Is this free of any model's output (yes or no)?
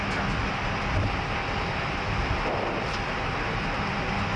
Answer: yes